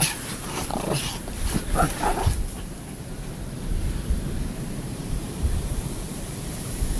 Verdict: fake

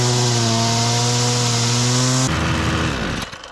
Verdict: real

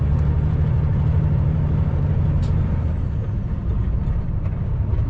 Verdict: fake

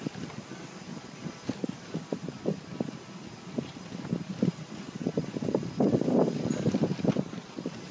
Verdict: real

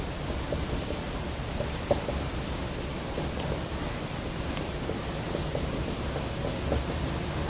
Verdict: fake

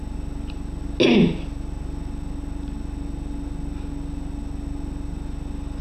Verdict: real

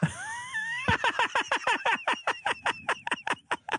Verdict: fake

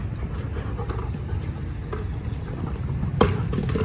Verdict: real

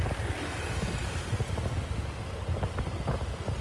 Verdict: real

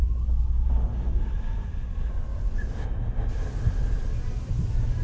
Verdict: real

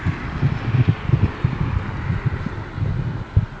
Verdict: real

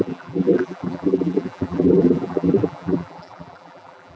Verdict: fake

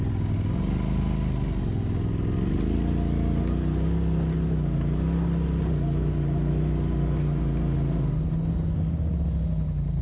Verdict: real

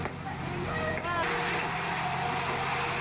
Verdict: real